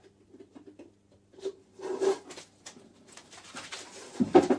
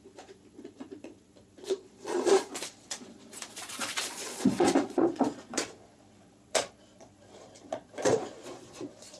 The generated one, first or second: second